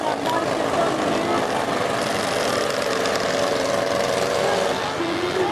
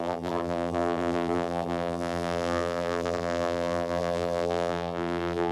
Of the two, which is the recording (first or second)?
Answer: first